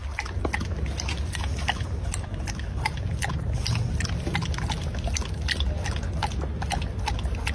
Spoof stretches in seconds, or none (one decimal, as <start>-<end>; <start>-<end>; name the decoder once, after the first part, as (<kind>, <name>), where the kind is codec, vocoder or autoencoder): none

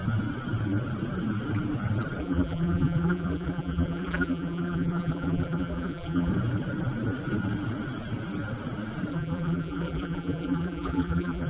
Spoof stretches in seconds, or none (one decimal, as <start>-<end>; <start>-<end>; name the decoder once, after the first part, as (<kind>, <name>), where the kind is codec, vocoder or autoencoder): 2.2-6.3 (vocoder, BigVGAN v2); 9.1-11.5

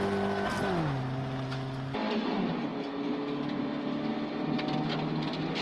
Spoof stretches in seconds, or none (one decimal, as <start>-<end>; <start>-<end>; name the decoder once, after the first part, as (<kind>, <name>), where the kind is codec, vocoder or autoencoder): none

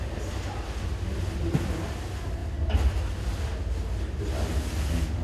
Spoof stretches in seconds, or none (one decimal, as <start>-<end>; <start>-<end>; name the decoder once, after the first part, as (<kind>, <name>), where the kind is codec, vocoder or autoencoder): none

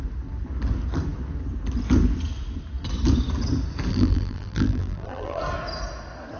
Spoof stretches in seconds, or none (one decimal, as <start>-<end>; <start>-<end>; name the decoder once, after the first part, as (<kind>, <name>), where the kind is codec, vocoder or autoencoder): 3.9-5.4 (vocoder, BigVGAN v2)

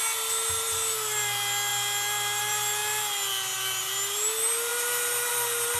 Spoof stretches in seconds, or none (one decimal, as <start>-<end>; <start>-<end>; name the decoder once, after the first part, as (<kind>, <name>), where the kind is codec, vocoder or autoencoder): none

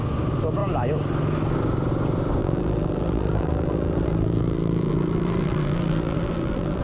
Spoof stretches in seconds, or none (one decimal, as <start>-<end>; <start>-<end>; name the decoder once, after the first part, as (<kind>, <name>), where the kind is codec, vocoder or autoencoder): 2.4-6.8 (vocoder, BigVGAN v2)